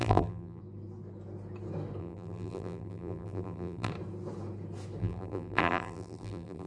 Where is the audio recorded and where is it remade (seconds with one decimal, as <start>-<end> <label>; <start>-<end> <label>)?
0.0-0.6 remade; 0.6-2.0 recorded; 2.0-3.9 remade; 3.9-5.0 recorded; 5.0-6.7 remade